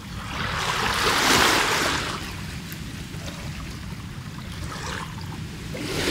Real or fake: real